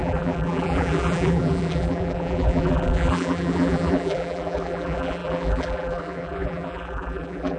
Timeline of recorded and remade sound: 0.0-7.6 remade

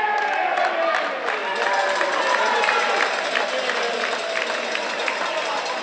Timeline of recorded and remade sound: 0.0-5.8 recorded

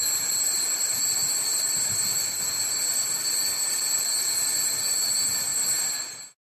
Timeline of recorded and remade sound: 0.0-6.4 recorded